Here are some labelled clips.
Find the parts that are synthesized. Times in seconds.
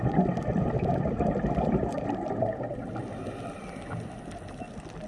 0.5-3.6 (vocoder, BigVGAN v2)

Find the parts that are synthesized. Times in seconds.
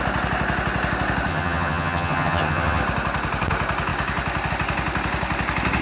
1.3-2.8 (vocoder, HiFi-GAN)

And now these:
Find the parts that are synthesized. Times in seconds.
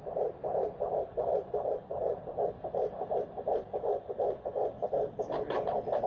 0.4-4.0 (vocoder, BigVGAN v2)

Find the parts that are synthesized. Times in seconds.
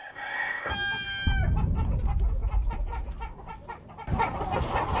0.0-0.7 (codec, ZipCodec)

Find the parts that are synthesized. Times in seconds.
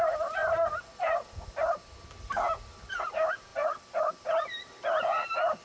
none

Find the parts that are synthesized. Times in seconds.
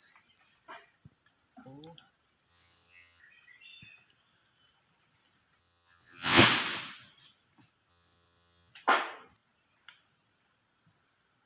2.5-3.2 (vocoder, WaveNeXt); 5.6-6.4; 7.9-8.7